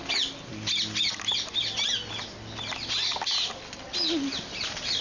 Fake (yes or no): no